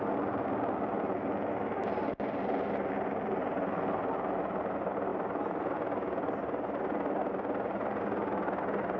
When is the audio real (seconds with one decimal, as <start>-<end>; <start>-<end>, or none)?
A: 0.0-9.0